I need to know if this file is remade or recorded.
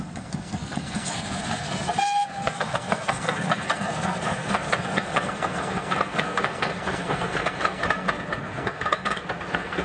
remade